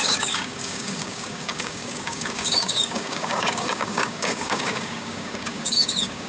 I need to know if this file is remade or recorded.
remade